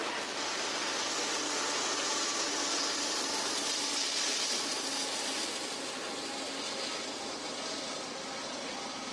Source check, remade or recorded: recorded